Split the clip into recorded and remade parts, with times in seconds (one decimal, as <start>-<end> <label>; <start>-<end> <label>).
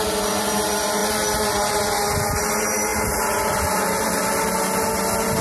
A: 0.0-5.4 recorded